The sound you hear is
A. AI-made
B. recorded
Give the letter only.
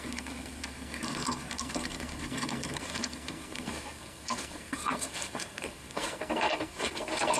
A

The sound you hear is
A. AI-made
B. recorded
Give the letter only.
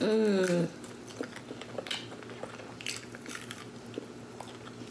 B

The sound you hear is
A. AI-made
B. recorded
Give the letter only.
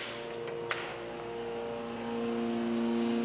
B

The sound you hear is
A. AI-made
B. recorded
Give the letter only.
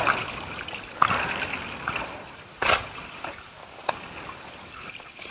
B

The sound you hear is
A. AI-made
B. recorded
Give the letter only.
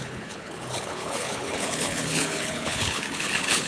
A